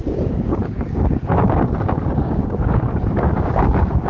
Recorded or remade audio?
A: remade